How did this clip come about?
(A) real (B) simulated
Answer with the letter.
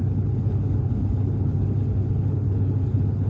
B